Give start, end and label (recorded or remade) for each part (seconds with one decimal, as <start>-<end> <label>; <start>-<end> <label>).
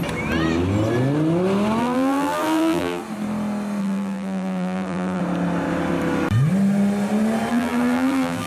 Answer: 0.0-1.8 recorded; 1.8-3.0 remade; 3.0-3.8 recorded; 3.8-5.2 remade; 5.2-7.5 recorded; 7.5-8.5 remade